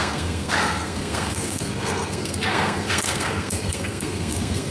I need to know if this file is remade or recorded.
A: remade